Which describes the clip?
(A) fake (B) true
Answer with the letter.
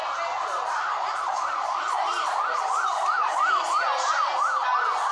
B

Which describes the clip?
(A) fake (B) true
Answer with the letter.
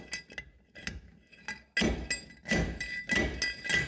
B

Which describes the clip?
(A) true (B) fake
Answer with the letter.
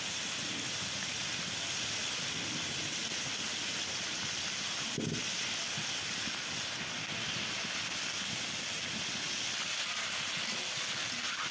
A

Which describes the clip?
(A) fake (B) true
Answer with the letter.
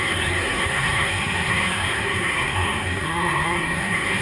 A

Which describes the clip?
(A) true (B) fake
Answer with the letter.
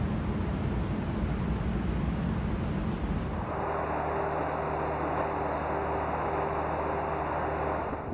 A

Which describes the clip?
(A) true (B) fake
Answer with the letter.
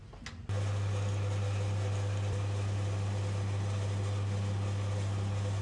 A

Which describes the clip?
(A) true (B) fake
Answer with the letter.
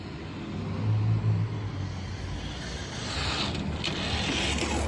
A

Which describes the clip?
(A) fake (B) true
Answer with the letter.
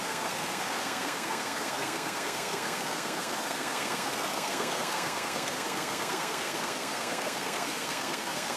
A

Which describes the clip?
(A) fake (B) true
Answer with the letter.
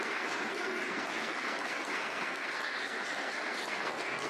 A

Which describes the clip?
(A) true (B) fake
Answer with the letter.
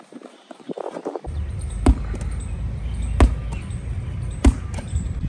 A